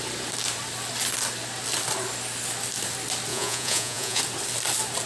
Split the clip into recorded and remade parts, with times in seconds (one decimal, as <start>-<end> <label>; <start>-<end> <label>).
0.0-3.3 recorded; 3.3-4.2 remade; 4.2-5.1 recorded